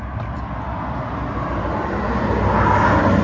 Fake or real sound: real